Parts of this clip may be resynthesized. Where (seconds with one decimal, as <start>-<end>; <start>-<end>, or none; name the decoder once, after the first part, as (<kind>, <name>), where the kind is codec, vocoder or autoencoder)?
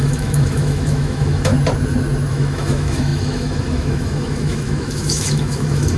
0.0-1.5 (autoencoder, DAC-VAE); 2.3-6.0